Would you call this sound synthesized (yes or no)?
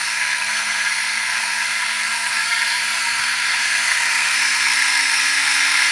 yes